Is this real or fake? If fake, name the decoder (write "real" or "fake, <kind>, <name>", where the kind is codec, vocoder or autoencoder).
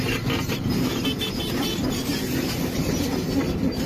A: real